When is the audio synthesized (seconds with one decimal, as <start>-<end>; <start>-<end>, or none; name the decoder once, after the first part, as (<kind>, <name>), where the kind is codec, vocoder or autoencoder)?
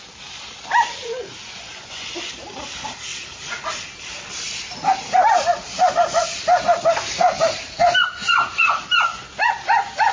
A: 1.4-2.3 (vocoder, Vocos); 8.2-8.8